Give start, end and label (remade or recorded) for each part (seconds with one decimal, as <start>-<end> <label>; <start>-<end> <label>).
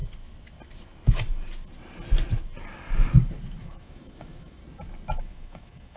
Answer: 0.0-3.6 recorded; 3.6-4.6 remade; 4.6-5.2 recorded; 5.2-6.0 remade